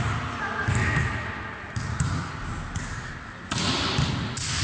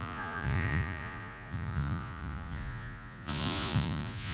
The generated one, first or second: second